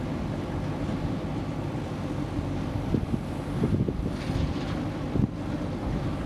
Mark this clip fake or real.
real